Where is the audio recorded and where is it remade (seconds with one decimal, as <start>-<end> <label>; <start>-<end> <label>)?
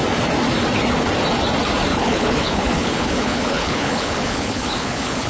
0.0-1.9 recorded; 1.9-5.3 remade